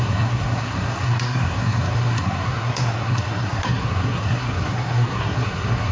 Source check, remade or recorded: remade